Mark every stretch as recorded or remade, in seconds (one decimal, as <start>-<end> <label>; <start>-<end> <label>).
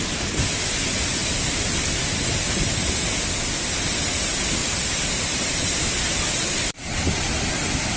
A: 0.0-1.2 recorded; 1.2-2.2 remade; 2.2-4.6 recorded; 4.6-8.0 remade